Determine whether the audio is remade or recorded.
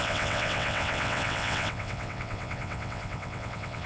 remade